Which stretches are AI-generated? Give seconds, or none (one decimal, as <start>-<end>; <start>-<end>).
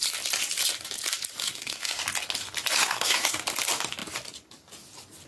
1.4-2.0; 2.8-3.4